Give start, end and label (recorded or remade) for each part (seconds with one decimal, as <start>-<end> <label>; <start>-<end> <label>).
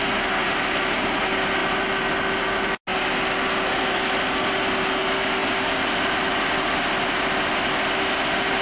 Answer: 0.0-8.6 recorded